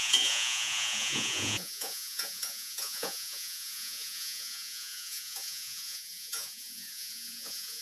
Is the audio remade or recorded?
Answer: remade